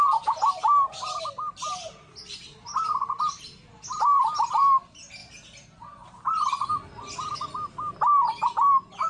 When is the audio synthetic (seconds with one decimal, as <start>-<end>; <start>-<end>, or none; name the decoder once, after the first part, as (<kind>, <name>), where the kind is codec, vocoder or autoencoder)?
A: none